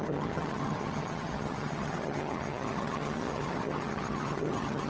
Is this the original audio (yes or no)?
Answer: no